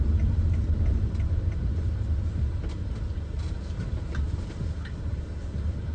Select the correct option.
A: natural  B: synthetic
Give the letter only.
A